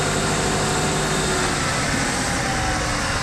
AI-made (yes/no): no